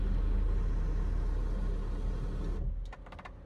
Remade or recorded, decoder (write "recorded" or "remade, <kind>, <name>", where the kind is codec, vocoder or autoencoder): recorded